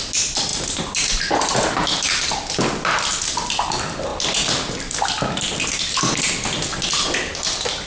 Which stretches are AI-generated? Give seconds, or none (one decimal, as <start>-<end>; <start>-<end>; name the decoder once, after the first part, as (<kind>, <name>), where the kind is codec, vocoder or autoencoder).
none